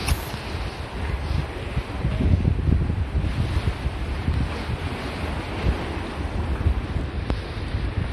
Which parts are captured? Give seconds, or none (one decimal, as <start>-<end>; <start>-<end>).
0.0-8.1